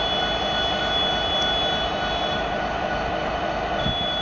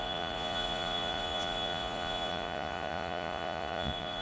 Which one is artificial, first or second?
second